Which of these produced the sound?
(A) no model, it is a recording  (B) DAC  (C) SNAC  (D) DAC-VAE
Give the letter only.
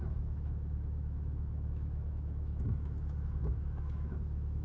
D